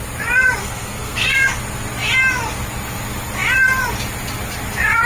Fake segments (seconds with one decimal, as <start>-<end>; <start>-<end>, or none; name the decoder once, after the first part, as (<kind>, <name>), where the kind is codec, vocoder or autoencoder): 0.6-1.5 (codec, SNAC)